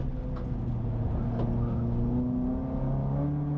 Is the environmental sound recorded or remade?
recorded